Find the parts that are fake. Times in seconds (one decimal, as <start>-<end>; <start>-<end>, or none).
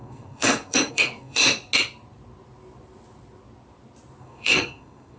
0.0-1.4; 4.2-5.2